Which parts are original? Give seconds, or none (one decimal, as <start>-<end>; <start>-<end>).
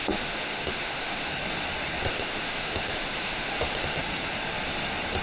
1.3-2.1; 4.0-5.2